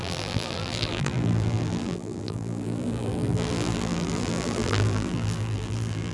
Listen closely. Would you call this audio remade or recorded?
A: remade